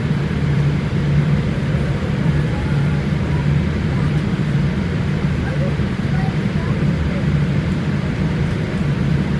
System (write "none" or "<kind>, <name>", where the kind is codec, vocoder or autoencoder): vocoder, BigVGAN v2